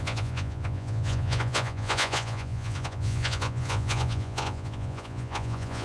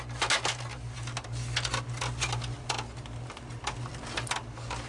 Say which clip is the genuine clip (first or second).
second